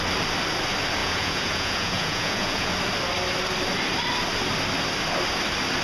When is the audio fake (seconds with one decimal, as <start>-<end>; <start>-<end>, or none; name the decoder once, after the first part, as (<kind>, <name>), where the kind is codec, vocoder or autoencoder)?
1.0-2.7 (vocoder, Vocos)